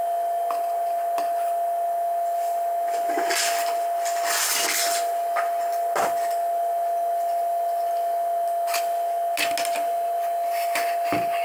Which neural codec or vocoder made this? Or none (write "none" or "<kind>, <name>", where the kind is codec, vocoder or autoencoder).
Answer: none